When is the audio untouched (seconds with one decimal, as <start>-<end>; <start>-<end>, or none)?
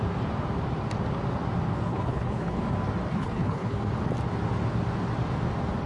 0.0-1.9; 2.6-3.1; 3.8-5.9